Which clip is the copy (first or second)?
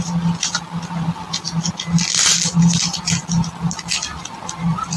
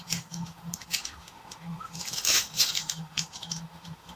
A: second